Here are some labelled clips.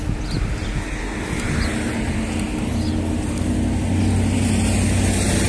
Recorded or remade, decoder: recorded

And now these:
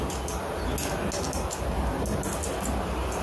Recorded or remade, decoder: recorded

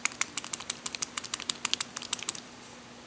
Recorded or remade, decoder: recorded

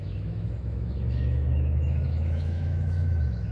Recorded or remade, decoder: remade, autoencoder, DAC-VAE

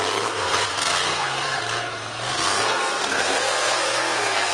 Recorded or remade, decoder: remade, codec, SNAC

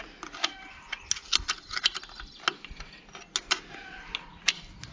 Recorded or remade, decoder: recorded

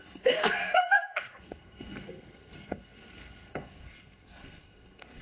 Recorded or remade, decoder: remade, codec, SNAC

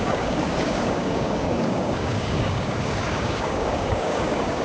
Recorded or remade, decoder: remade, codec, DAC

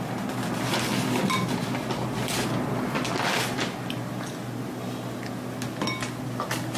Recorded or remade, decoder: recorded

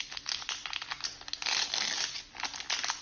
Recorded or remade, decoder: recorded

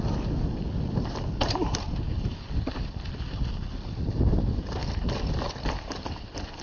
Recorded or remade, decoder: recorded